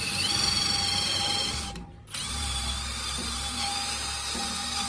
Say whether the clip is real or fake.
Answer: fake